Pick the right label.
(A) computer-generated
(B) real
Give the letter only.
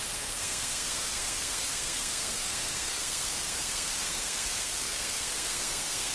A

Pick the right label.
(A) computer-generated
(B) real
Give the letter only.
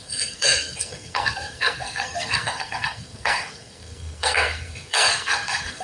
A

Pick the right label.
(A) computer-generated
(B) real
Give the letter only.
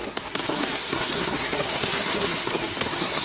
A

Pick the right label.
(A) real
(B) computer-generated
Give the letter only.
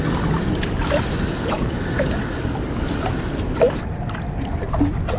A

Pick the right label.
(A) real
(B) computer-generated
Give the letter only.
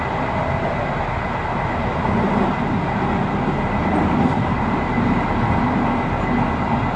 A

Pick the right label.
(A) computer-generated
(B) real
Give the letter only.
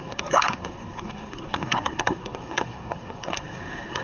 A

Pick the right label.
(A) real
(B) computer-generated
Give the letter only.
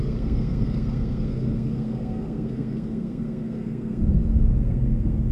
B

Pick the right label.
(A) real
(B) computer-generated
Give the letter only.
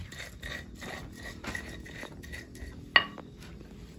A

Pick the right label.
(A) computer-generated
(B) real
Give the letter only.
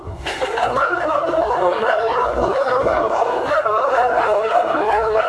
A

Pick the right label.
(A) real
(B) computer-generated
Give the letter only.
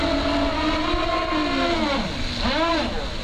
A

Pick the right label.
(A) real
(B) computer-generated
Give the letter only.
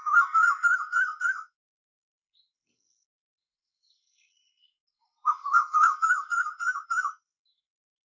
B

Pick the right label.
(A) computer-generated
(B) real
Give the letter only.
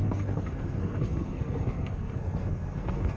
A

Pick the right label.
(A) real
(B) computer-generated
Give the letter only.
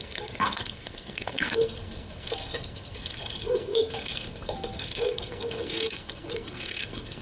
B